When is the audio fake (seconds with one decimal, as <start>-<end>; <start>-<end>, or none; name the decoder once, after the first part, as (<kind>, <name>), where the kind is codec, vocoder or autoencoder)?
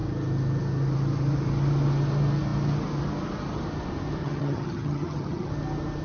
4.2-5.5 (vocoder, HiFi-GAN)